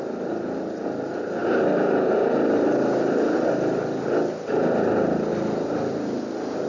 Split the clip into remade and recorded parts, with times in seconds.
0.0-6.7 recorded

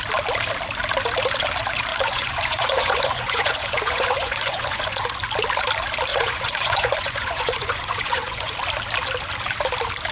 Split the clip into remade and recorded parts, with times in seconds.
0.0-1.9 recorded; 1.9-5.0 remade; 5.0-6.1 recorded; 6.1-8.5 remade; 8.5-10.1 recorded

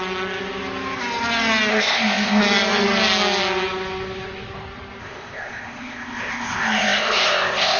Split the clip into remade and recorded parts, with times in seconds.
0.0-1.7 recorded; 1.7-2.4 remade; 2.4-5.0 recorded; 5.0-7.8 remade

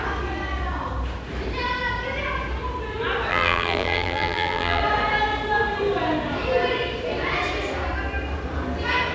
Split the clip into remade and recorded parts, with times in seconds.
0.0-3.3 recorded; 3.3-4.8 remade; 4.8-9.1 recorded